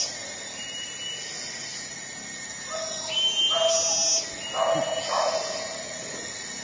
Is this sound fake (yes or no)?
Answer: no